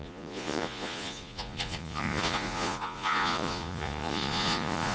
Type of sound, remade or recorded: remade